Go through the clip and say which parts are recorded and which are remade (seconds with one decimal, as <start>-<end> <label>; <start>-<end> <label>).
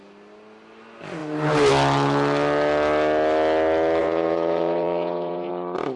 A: 0.0-4.0 recorded; 4.0-5.5 remade; 5.5-6.0 recorded